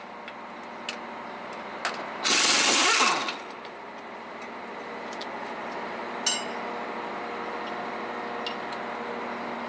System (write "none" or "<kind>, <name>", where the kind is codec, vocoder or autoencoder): none